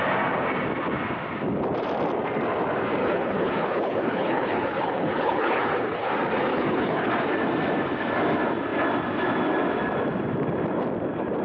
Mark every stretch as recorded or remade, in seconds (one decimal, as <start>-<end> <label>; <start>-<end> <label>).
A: 0.0-3.0 recorded; 3.0-6.1 remade; 6.1-6.5 recorded; 6.5-7.1 remade; 7.1-11.4 recorded